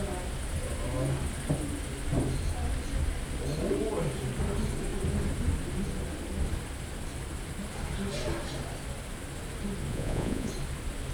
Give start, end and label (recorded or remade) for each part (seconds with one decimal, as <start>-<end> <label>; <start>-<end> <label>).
0.0-9.9 recorded; 9.9-10.5 remade; 10.5-11.1 recorded